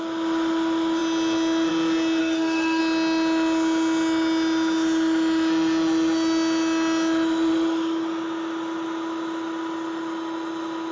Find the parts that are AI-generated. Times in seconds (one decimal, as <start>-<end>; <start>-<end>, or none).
2.2-2.8